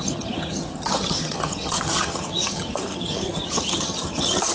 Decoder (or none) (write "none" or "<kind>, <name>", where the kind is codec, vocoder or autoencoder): vocoder, HiFi-GAN